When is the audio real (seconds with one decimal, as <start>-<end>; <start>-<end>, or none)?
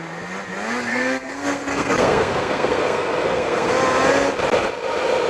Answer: 0.0-0.9; 3.7-5.3